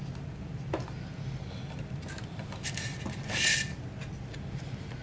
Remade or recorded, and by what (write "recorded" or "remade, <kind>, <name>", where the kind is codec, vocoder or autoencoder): recorded